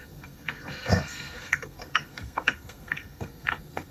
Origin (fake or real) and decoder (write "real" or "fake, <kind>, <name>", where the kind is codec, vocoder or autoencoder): fake, codec, SNAC